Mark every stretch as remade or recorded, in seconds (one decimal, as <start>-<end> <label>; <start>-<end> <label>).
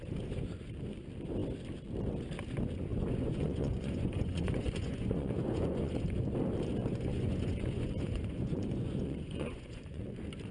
0.0-2.9 recorded; 2.9-5.9 remade; 5.9-6.8 recorded; 6.8-10.1 remade; 10.1-10.5 recorded